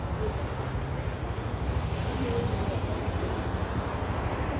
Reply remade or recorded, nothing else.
recorded